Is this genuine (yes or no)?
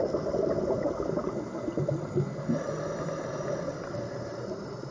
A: yes